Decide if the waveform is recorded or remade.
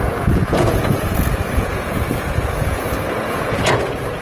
remade